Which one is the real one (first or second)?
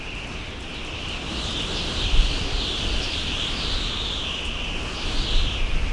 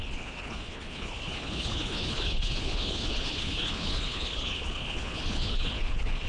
first